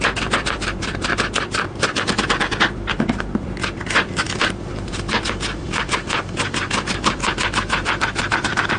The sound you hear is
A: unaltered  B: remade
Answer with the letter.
B